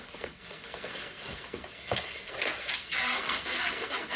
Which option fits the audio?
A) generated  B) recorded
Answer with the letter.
A